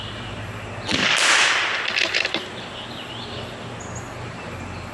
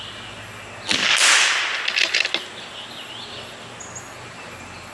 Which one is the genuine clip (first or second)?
second